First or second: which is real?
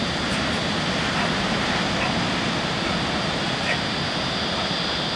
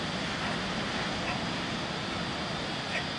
second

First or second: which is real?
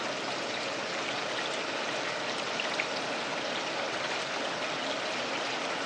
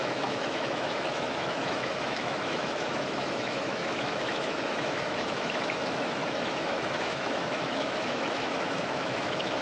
first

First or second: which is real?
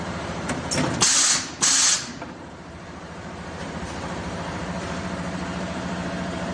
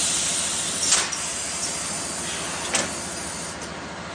second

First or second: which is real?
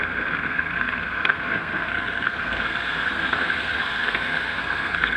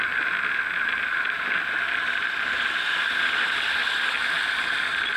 second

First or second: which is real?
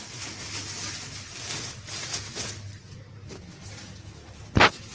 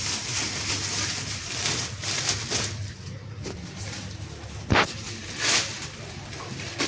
first